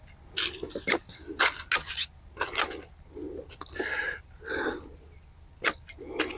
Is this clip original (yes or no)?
yes